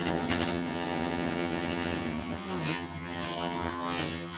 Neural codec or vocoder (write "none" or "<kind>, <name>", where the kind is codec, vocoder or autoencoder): vocoder, HiFi-GAN